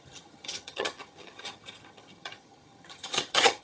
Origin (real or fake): fake